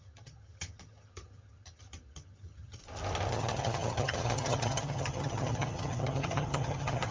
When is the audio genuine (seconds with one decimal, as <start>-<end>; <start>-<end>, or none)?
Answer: 2.8-3.3